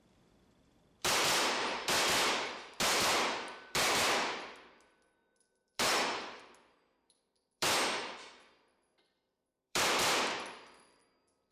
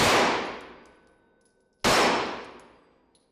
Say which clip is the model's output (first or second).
first